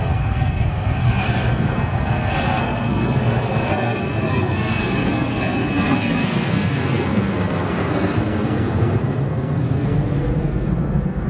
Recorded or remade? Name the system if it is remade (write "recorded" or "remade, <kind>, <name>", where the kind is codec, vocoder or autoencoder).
remade, codec, SNAC